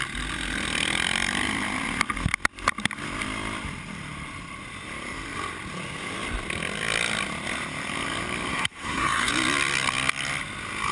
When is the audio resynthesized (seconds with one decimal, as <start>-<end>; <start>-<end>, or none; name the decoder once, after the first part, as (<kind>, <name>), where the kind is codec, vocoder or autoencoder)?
8.5-9.3 (codec, SNAC)